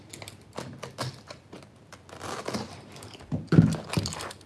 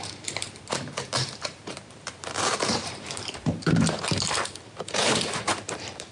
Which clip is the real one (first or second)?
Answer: first